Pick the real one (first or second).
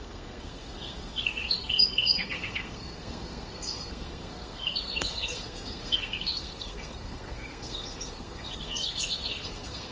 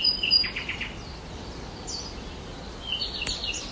second